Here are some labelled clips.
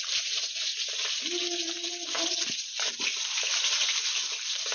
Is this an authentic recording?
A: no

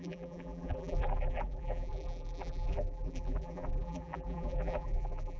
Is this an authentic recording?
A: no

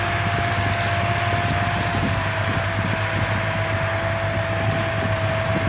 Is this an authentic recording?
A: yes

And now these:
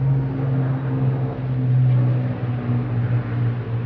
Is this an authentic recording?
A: yes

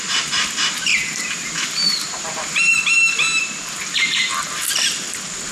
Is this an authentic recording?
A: no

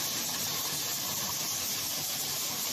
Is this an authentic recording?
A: no